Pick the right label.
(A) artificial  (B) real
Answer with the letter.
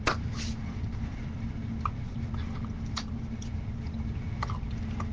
B